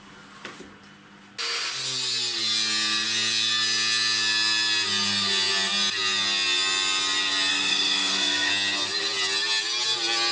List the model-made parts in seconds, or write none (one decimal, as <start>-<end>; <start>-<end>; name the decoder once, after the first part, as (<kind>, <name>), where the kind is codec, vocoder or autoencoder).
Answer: 7.5-8.5 (codec, SNAC)